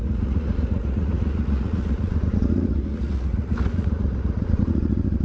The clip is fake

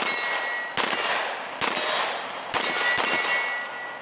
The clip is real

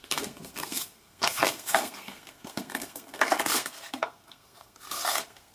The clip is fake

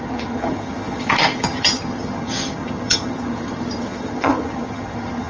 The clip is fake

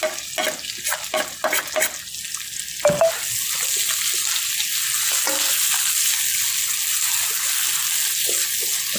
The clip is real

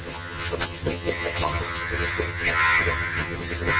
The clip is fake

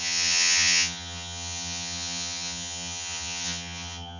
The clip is fake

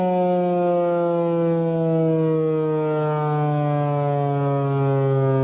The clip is real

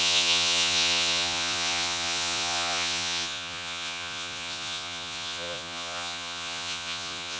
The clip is fake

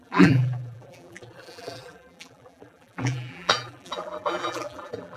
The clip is fake